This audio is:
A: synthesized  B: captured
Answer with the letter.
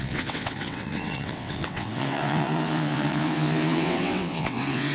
A